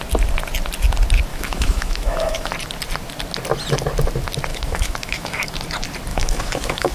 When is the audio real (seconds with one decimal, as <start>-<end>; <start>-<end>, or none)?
0.0-1.3; 2.5-4.5; 5.5-6.1

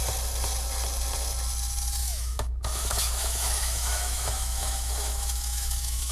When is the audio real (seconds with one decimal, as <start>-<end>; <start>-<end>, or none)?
0.0-2.0

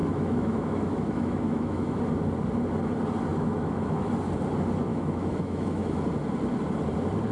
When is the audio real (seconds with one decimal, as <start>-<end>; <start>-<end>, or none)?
2.0-3.3; 4.1-4.9; 6.0-7.3

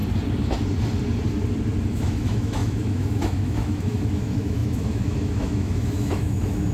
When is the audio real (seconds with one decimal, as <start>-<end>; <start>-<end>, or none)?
0.0-1.9

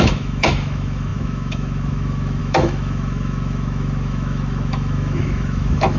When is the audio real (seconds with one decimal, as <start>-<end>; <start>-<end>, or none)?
none